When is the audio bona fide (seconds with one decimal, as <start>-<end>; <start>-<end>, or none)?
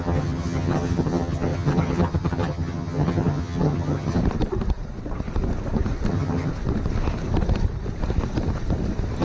4.2-6.1; 6.5-9.2